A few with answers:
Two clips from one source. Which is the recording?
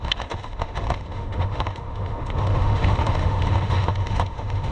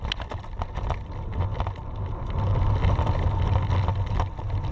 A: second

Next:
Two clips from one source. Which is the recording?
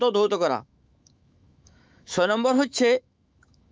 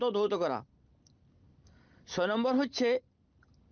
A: second